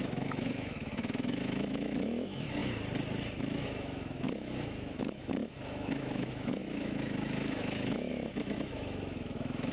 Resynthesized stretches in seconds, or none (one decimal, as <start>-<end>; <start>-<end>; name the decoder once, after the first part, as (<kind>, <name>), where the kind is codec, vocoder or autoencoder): 0.0-2.6 (autoencoder, DAC-VAE); 3.4-9.7